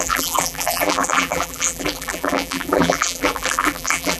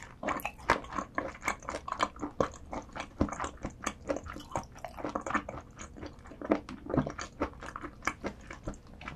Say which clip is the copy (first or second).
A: first